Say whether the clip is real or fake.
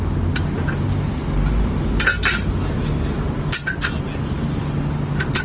real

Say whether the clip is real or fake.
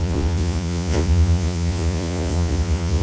fake